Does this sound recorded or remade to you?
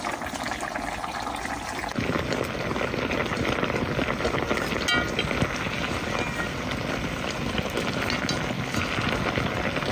recorded